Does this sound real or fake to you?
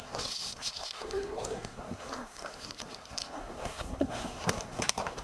fake